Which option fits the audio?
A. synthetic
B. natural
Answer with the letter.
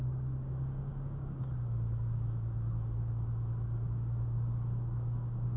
A